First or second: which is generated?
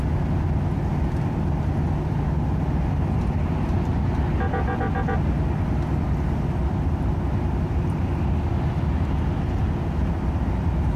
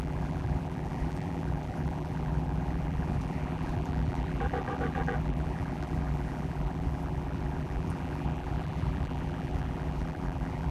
second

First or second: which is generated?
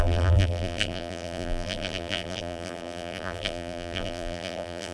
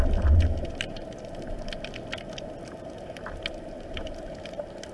first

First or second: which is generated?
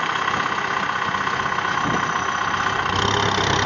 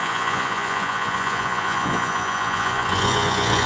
second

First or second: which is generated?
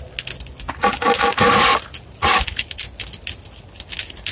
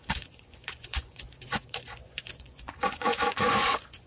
second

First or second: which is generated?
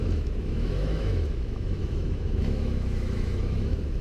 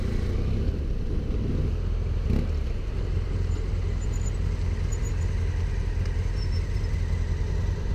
first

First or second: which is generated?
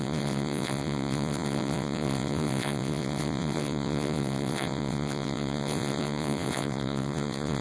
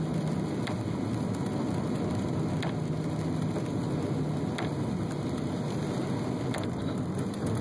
first